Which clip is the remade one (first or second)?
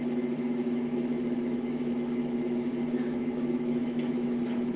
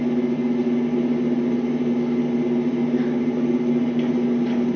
first